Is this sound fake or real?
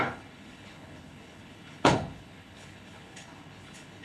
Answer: fake